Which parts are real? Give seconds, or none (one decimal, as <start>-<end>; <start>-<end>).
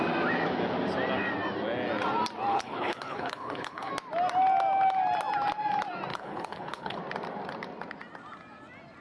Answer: 0.0-2.5; 3.9-6.1; 7.0-9.0